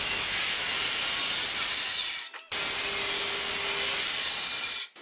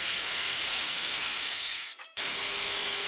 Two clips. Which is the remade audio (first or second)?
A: second